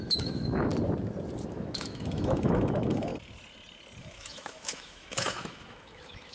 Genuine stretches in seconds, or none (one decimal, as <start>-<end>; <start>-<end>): 0.7-1.5; 3.1-4.0

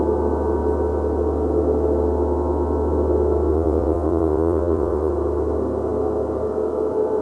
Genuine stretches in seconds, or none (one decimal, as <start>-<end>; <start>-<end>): 0.0-3.5; 5.1-7.2

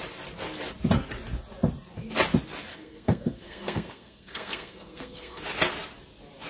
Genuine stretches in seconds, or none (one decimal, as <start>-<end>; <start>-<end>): 0.0-2.7; 5.4-6.5

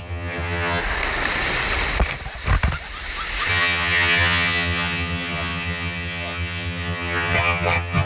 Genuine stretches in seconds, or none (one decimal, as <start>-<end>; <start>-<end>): 0.8-3.5

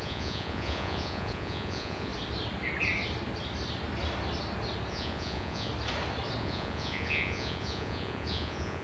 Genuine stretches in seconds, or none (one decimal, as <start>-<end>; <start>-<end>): 2.1-4.9; 5.7-6.4

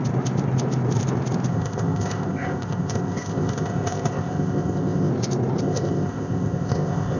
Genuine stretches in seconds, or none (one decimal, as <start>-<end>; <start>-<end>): 0.0-1.5; 5.1-5.6